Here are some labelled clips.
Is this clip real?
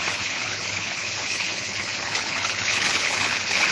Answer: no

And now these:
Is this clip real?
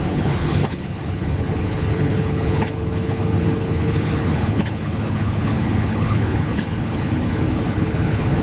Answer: no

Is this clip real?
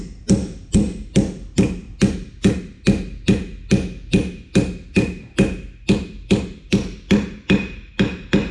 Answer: yes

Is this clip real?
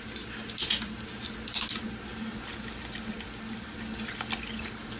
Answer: yes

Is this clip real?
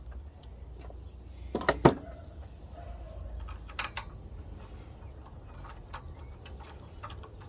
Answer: yes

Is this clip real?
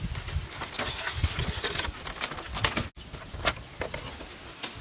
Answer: yes